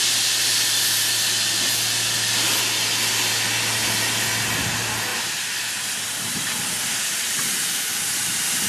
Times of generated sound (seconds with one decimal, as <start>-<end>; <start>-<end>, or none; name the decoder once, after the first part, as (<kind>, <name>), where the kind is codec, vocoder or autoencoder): 5.1-5.7 (vocoder, BigVGAN v2)